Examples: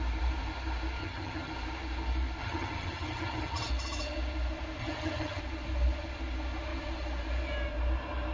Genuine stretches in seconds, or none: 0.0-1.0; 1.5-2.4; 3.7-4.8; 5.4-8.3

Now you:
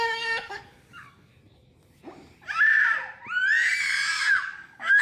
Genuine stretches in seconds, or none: 1.3-4.3

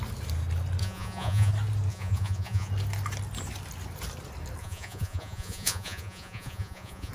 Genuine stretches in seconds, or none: 0.0-0.8; 1.5-1.9; 2.7-4.6

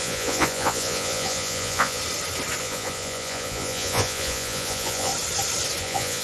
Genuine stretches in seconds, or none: 2.0-2.6; 5.1-5.8